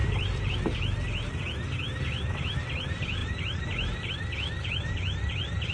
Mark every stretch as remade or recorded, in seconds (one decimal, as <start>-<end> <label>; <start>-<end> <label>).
0.0-0.5 remade; 0.5-3.2 recorded; 3.2-4.1 remade; 4.1-5.7 recorded